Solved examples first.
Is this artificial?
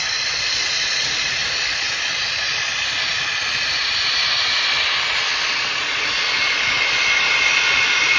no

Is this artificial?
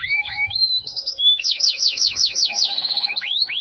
yes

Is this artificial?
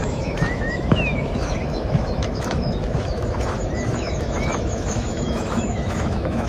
yes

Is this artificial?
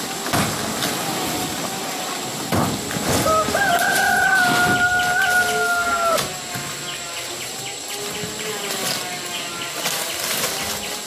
no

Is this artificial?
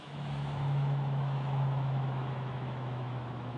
yes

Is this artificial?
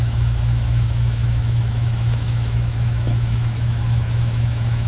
yes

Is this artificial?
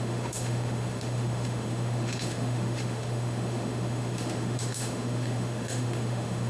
yes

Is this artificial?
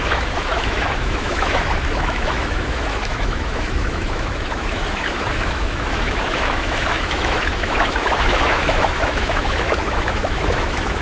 yes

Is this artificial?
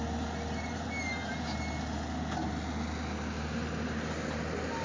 no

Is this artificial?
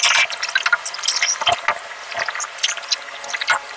no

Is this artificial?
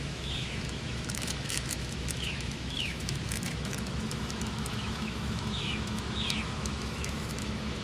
yes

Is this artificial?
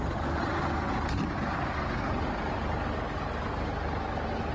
no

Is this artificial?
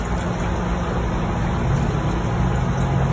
no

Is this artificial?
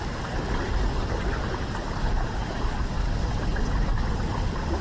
no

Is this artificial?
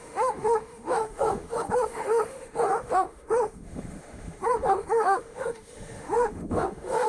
yes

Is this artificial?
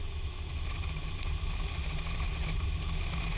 no